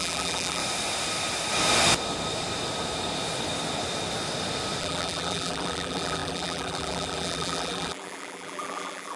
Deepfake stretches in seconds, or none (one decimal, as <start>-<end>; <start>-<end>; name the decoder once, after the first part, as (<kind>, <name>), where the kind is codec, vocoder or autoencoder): 0.0-0.6 (vocoder, BigVGAN v2); 4.8-9.2